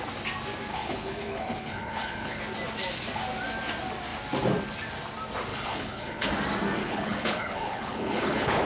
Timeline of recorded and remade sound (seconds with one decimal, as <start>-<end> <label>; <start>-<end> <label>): 0.0-0.7 recorded; 0.7-2.4 remade; 2.4-5.5 recorded; 5.5-6.3 remade; 6.3-6.8 recorded; 6.8-8.6 remade